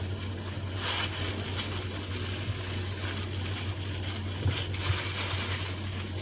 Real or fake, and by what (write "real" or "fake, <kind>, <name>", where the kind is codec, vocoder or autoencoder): real